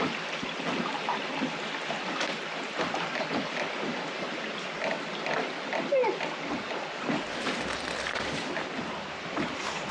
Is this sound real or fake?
fake